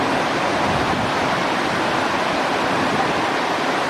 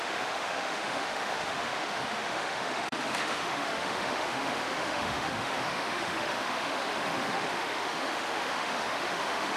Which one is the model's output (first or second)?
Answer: second